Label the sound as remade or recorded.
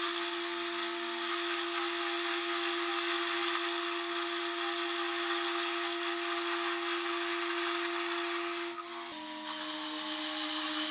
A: recorded